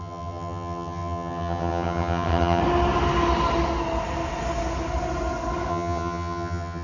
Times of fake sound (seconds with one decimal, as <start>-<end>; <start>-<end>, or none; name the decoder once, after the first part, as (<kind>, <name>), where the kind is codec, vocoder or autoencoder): 0.0-2.6 (vocoder, HiFi-GAN); 5.7-6.8

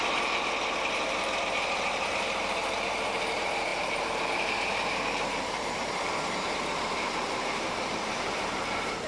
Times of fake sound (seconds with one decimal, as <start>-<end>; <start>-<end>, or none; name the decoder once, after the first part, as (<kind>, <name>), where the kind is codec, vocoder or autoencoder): 0.8-9.1 (vocoder, BigVGAN v2)

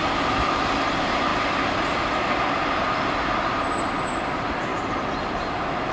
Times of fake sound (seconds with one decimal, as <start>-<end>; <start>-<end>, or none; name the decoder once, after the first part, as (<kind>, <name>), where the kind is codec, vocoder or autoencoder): none

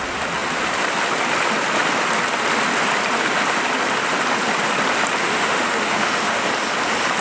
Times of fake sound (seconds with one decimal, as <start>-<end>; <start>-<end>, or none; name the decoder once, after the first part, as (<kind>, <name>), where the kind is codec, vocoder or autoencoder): 5.2-6.5 (autoencoder, DAC-VAE)

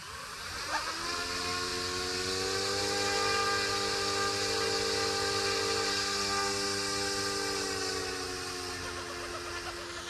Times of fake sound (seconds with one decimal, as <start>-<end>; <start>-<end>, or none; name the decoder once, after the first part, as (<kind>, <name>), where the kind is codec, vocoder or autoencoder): none